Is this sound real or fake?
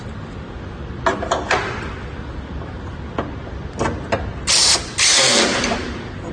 real